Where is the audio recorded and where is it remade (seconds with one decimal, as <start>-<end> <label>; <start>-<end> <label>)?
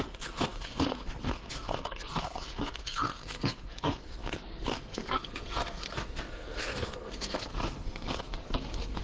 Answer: 0.0-9.0 remade